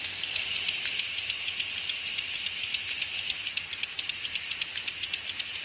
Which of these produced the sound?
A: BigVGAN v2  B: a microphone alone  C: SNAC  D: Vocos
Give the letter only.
B